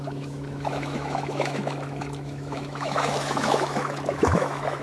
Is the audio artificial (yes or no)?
yes